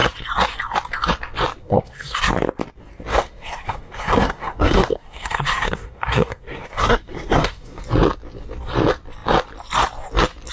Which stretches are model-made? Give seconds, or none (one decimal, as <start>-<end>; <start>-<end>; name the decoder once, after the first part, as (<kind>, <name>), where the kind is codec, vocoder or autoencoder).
1.6-2.3 (codec, SNAC); 3.1-7.8